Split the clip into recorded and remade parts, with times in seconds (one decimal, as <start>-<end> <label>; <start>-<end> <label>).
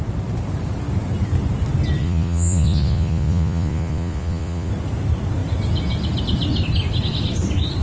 0.0-2.0 recorded; 2.0-4.7 remade; 4.7-7.8 recorded